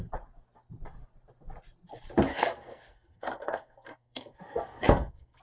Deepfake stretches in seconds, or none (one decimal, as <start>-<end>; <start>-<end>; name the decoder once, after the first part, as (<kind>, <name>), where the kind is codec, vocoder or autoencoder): 2.3-5.4 (codec, SNAC)